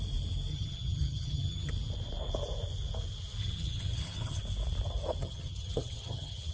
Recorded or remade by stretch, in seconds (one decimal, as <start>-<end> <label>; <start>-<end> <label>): 0.0-0.5 recorded; 0.5-1.7 remade; 1.7-3.4 recorded; 3.4-4.4 remade; 4.4-5.2 recorded; 5.2-6.5 remade